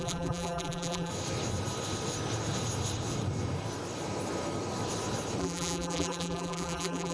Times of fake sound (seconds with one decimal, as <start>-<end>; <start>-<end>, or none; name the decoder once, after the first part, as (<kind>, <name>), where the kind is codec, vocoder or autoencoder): 0.0-1.1 (vocoder, BigVGAN v2); 5.4-7.1